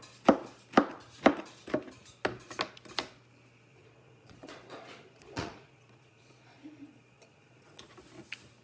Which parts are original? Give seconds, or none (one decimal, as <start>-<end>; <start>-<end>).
0.0-3.7; 7.8-8.6